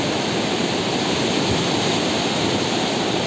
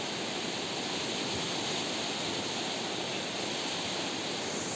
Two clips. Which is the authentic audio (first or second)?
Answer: second